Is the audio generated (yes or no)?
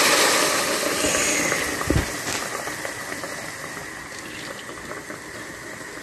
no